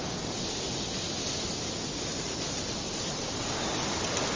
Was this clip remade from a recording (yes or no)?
no